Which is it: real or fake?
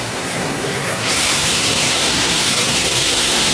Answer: fake